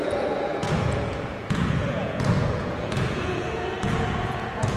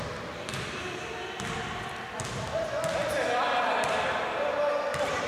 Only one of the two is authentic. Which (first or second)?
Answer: second